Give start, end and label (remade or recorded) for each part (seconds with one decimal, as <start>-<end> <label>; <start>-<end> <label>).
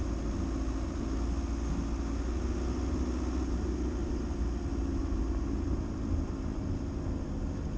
0.0-4.0 recorded; 4.0-4.6 remade; 4.6-7.8 recorded